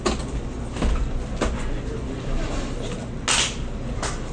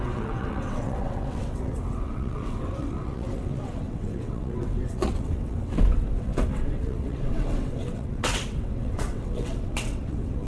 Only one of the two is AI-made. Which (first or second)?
second